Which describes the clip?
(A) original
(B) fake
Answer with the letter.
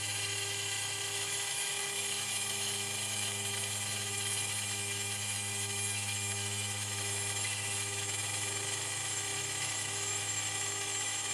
B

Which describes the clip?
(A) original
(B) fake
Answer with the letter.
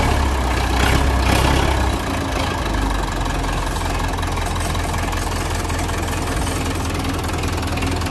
A